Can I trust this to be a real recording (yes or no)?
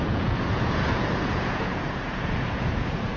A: no